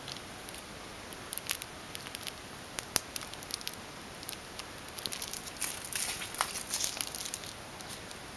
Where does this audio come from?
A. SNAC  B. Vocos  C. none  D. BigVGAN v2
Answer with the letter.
C